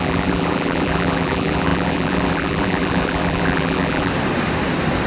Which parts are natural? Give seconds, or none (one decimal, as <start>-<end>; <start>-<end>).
4.1-5.1